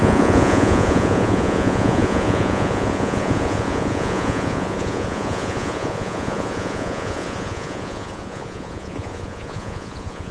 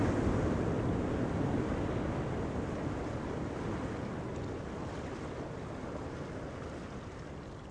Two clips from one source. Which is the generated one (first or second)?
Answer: first